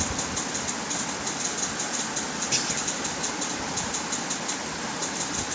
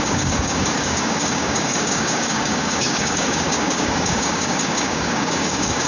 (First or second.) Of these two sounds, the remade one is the second